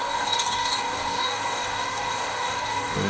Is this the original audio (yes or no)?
no